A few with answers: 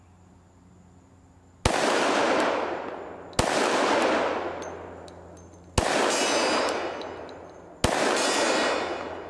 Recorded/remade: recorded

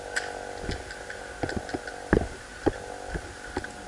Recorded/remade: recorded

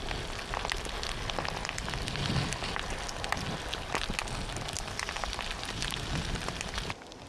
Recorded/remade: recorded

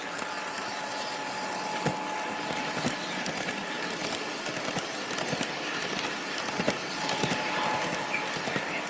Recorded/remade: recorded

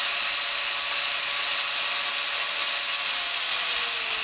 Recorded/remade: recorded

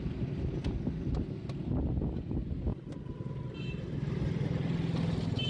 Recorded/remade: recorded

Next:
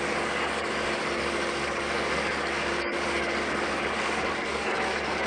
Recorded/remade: remade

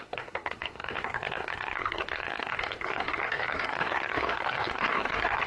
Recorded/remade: remade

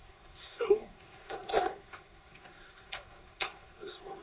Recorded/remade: remade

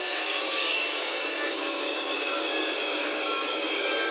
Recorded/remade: remade